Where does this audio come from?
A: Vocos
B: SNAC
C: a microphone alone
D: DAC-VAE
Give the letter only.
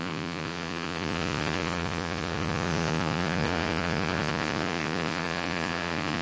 A